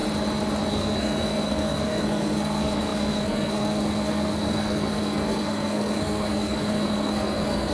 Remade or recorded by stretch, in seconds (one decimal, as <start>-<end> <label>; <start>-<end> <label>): 0.0-0.7 recorded; 0.7-7.7 remade